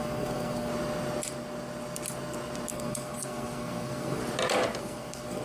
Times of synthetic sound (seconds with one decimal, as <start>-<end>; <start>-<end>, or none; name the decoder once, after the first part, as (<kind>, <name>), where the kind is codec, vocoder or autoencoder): 0.0-0.7 (codec, SNAC); 2.7-4.2; 4.8-5.4